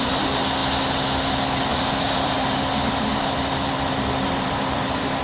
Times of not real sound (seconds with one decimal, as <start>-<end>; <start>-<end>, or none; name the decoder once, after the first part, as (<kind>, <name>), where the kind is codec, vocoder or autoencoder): 1.7-2.6 (vocoder, BigVGAN v2); 3.1-5.2